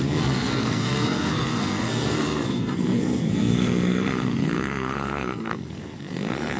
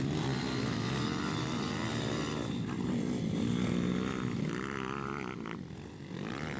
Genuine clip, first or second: second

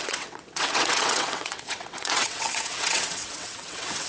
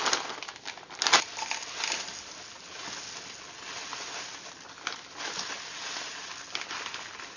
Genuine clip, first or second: second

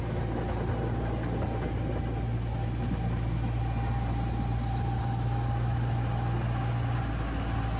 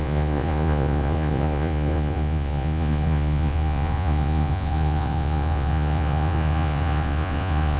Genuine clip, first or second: first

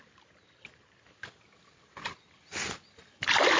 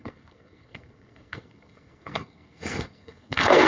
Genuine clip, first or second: first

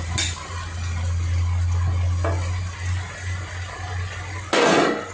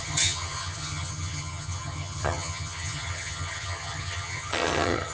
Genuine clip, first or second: first